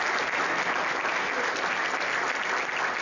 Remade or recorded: recorded